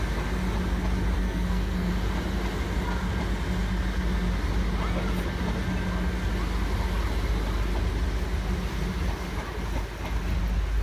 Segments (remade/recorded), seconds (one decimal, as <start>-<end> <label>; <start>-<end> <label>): 0.0-1.2 recorded; 1.2-1.9 remade; 1.9-10.8 recorded